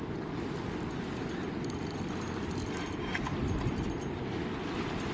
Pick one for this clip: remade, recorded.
recorded